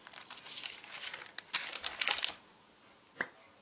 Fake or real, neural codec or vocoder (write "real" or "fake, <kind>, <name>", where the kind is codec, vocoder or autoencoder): real